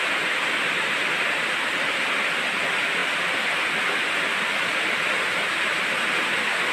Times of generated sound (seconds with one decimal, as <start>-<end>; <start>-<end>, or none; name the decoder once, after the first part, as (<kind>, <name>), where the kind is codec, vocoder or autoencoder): 3.0-3.8 (vocoder, BigVGAN v2)